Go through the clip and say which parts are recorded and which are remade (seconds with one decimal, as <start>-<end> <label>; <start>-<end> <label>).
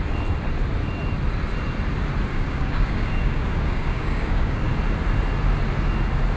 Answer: 0.0-2.3 recorded; 2.3-4.7 remade; 4.7-6.4 recorded